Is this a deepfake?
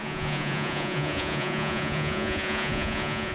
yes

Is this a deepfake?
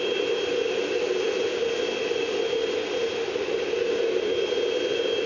no